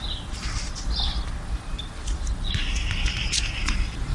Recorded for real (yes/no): yes